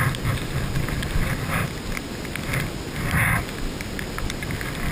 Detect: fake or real real